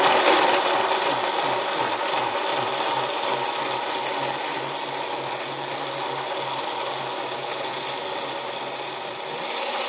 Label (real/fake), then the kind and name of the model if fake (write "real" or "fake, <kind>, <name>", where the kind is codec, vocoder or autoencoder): real